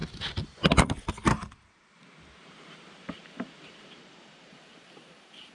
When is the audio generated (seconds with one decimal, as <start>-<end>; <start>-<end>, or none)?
2.4-5.5